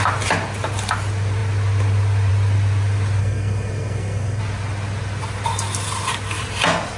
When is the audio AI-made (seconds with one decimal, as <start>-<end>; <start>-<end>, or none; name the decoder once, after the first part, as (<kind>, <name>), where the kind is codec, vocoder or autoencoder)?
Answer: 3.2-4.4 (codec, SNAC)